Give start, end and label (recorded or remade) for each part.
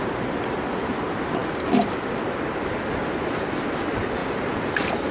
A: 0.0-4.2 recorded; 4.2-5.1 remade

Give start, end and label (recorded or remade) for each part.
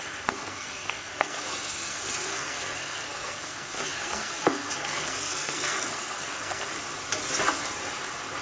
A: 0.0-6.7 remade; 6.7-8.4 recorded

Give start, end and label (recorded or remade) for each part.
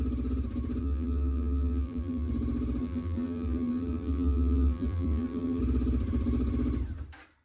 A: 0.0-0.8 recorded; 0.8-2.3 remade; 2.3-2.8 recorded; 2.8-5.6 remade; 5.6-7.4 recorded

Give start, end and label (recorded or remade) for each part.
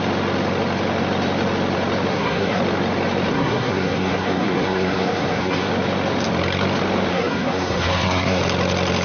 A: 0.0-2.1 recorded; 2.1-2.6 remade; 2.6-3.3 recorded; 3.3-5.7 remade; 5.7-7.1 recorded; 7.1-8.4 remade; 8.4-9.0 recorded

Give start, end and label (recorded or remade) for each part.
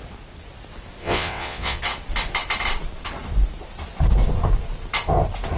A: 0.0-1.0 recorded; 1.0-1.8 remade; 1.8-5.6 recorded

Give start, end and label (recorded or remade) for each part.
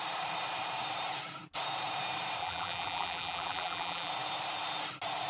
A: 0.0-2.4 recorded; 2.4-4.1 remade; 4.1-5.3 recorded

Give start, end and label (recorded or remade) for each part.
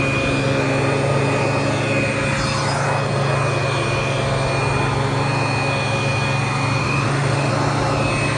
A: 0.0-6.8 recorded; 6.8-7.5 remade; 7.5-8.4 recorded